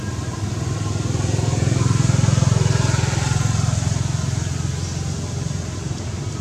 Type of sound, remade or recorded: recorded